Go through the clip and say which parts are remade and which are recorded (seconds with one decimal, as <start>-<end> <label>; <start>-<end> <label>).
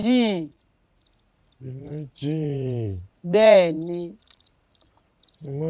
0.0-0.6 remade; 0.6-1.8 recorded; 1.8-5.2 remade; 5.2-5.7 recorded